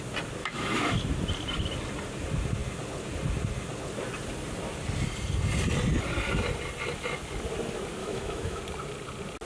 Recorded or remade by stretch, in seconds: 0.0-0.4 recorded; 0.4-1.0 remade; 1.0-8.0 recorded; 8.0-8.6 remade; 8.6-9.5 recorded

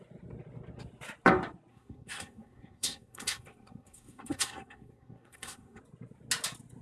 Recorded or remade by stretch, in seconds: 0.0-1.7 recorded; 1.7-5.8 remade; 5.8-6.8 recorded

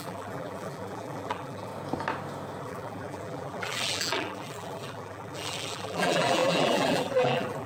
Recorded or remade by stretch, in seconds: 0.0-1.7 remade; 1.7-2.6 recorded; 2.6-7.7 remade

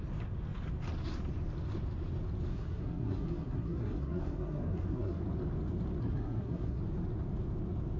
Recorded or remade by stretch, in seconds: 0.0-2.5 recorded; 2.5-5.2 remade; 5.2-6.0 recorded; 6.0-6.8 remade; 6.8-8.0 recorded